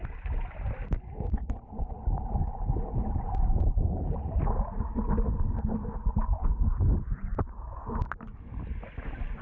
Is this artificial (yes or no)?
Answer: no